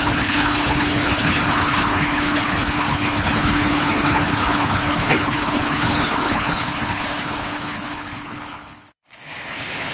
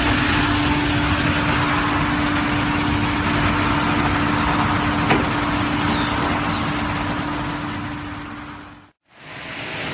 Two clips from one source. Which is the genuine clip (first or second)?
second